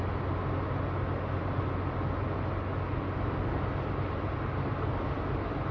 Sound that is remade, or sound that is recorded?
recorded